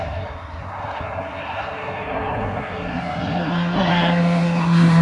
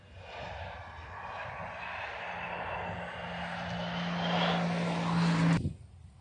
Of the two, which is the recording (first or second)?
second